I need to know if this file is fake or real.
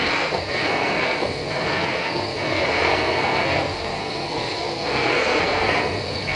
fake